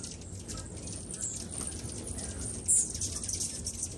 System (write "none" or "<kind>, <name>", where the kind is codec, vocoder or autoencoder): none